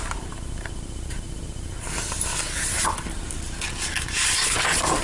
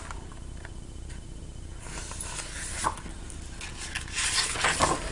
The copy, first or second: first